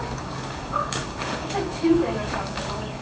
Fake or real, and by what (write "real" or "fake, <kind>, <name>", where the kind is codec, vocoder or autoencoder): fake, codec, DAC